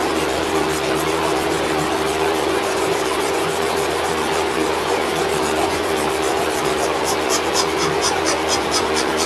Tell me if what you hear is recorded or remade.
remade